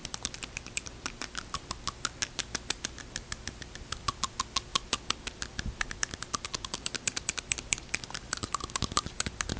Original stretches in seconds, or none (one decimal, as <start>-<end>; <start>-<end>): 1.1-4.7; 8.2-9.6